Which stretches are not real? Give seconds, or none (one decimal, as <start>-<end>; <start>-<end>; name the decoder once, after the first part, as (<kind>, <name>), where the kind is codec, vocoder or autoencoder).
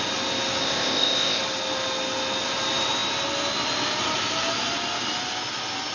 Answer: 0.6-1.4 (codec, ZipCodec)